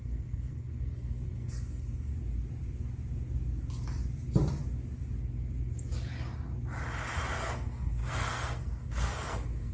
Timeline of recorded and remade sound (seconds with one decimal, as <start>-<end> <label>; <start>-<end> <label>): 0.0-2.1 remade; 2.1-7.3 recorded; 7.3-9.7 remade